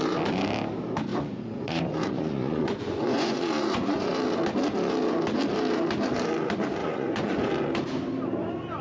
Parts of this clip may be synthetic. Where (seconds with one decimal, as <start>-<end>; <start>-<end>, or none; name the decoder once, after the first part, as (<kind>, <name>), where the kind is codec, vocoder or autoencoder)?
1.1-4.1 (vocoder, Vocos); 6.8-7.5